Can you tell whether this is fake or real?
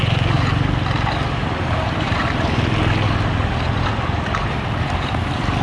real